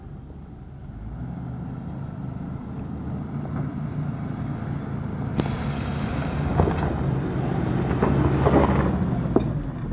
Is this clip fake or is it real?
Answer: real